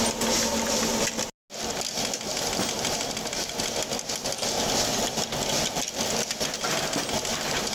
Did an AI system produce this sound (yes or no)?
no